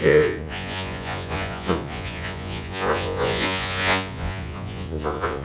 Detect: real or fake fake